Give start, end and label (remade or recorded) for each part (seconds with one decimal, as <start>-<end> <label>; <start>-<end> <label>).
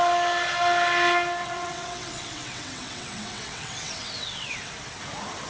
0.0-1.4 recorded; 1.4-4.7 remade; 4.7-5.5 recorded